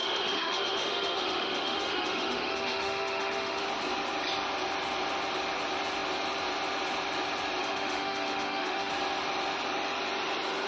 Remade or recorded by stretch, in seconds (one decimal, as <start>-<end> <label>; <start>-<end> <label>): 0.0-3.6 remade; 3.6-7.6 recorded; 7.6-8.9 remade; 8.9-10.7 recorded